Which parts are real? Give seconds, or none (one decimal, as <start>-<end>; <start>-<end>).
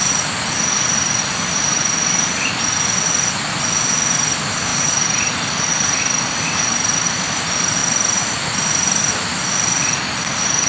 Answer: 0.0-10.7